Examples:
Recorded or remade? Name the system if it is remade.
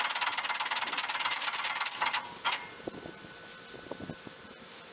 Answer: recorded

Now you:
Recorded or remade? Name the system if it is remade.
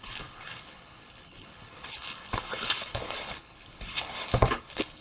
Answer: remade, codec, HILCodec